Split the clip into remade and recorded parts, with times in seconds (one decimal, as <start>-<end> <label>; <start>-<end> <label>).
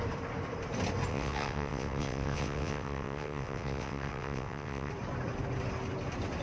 0.0-1.1 recorded; 1.1-4.9 remade; 4.9-6.4 recorded